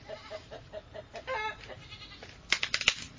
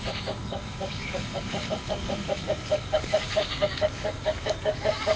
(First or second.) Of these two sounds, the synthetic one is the second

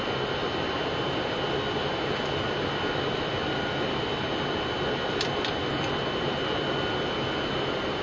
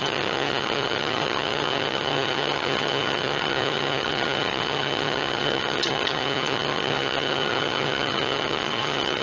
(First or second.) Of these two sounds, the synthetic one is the second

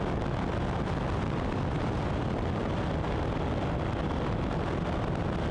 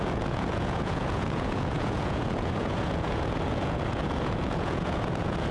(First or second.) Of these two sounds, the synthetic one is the second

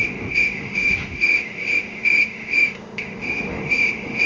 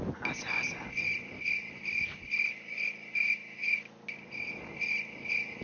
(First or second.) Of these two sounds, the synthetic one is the first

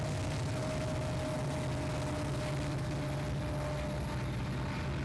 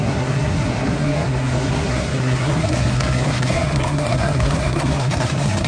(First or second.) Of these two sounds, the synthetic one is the second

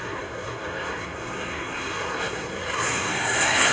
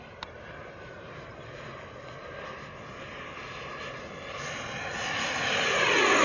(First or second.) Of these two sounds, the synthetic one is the first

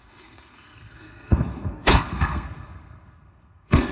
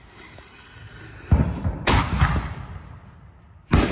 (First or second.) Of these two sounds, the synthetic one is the first